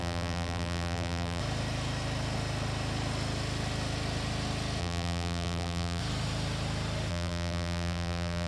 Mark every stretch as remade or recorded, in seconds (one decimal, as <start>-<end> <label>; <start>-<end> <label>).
0.0-1.4 remade; 1.4-4.8 recorded; 4.8-6.0 remade; 6.0-7.1 recorded; 7.1-8.5 remade